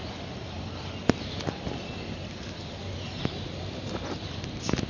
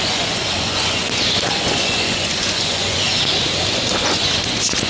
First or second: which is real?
first